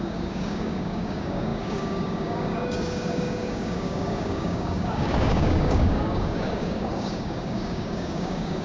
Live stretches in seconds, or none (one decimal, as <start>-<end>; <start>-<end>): none